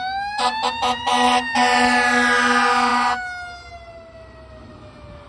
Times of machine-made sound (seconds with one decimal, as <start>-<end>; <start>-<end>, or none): none